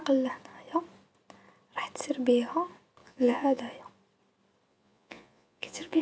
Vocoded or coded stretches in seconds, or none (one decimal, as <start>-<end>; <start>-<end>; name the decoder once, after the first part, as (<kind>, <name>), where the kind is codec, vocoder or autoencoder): 3.0-3.6 (vocoder, Vocos); 4.7-6.0